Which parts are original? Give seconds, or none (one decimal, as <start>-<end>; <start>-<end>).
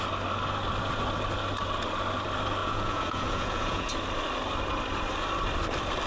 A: 0.0-2.6; 3.9-6.1